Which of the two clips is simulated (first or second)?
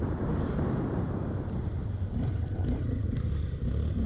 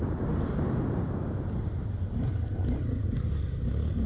first